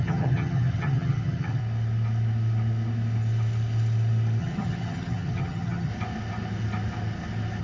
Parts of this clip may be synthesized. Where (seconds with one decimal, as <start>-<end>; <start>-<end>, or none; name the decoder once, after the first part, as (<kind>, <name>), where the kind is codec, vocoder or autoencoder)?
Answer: 0.0-1.6 (vocoder, HiFi-GAN); 4.4-5.9